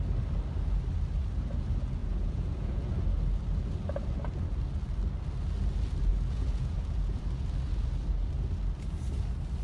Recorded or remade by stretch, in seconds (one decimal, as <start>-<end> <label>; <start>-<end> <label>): 0.0-2.0 recorded; 2.0-2.9 remade; 2.9-6.1 recorded; 6.1-7.2 remade; 7.2-9.6 recorded

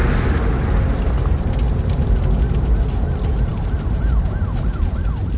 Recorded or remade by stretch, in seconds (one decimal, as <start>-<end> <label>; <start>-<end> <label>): 0.0-5.4 recorded

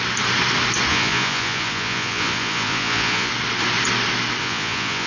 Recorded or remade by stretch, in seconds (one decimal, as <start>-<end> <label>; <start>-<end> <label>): 0.0-0.9 recorded; 0.9-3.3 remade; 3.3-4.4 recorded; 4.4-5.1 remade

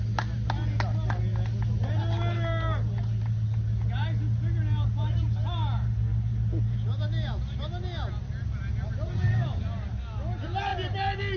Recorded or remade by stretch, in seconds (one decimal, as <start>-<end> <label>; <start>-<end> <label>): 0.0-11.4 recorded

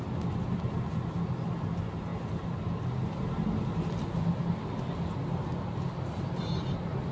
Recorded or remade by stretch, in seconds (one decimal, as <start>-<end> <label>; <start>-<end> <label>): 0.0-7.1 recorded